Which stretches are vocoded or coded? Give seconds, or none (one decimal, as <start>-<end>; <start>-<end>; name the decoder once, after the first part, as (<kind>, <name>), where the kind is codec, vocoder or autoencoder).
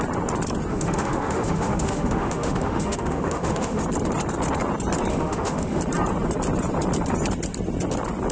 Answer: 0.7-3.8 (autoencoder, DAC-VAE); 5.1-5.8